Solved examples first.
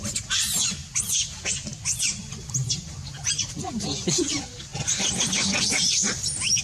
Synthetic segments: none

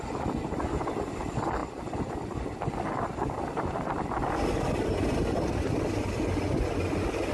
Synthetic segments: none